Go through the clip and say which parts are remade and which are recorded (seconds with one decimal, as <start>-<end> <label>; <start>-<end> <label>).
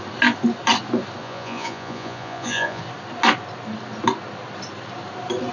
0.0-1.2 recorded; 1.2-2.8 remade; 2.8-5.5 recorded